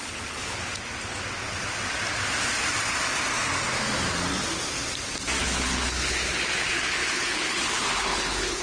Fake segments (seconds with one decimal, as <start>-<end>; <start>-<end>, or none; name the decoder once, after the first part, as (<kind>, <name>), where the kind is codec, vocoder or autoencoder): 0.0-0.6 (codec, HILCodec); 5.4-8.6